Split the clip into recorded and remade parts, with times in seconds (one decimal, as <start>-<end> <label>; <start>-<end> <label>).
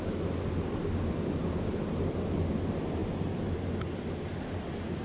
0.0-1.4 recorded; 1.4-2.1 remade; 2.1-5.0 recorded